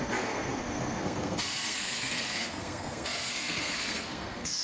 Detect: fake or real fake